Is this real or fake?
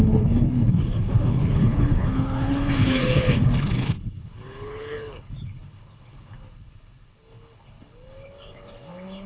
fake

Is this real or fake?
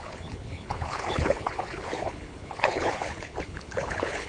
fake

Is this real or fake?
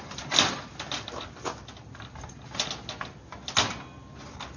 real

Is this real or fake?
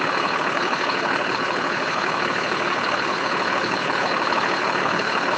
fake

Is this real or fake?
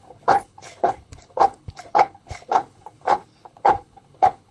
fake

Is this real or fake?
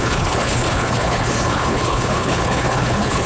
fake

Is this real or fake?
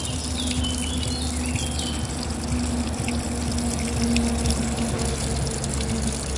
real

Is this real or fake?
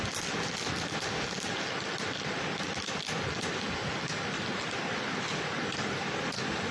real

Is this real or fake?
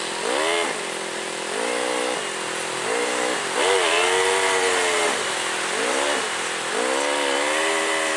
real